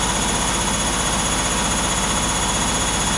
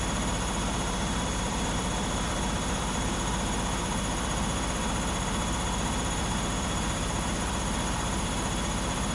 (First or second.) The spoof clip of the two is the second